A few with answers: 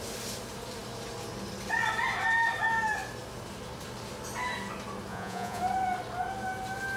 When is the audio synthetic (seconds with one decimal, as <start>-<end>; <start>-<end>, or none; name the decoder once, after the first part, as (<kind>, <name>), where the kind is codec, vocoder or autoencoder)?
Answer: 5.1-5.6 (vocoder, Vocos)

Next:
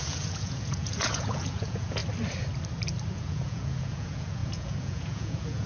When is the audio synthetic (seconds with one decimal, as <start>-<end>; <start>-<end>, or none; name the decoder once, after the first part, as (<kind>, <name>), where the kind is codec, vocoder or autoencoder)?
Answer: 0.0-2.0 (vocoder, Vocos); 3.1-5.7

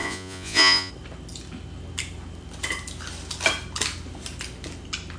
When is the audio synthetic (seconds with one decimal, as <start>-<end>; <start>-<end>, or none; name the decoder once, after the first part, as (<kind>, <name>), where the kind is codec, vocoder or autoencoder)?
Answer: 0.0-0.9 (vocoder, Vocos)

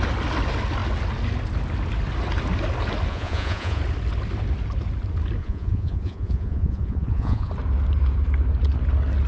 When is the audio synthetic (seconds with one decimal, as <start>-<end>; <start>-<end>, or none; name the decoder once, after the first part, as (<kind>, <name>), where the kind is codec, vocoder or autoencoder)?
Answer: 3.1-3.8 (vocoder, Vocos); 5.4-7.5

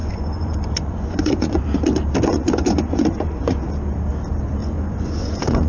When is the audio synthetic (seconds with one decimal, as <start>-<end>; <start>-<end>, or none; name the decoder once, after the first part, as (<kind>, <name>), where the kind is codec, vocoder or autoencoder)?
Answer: 0.0-1.6 (vocoder, Vocos); 2.3-3.6; 4.6-5.7

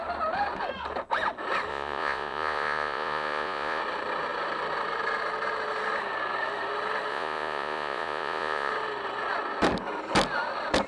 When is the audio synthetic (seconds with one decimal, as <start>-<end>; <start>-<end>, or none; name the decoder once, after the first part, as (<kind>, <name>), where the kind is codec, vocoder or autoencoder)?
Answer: 1.7-3.8 (vocoder, Vocos); 7.1-8.7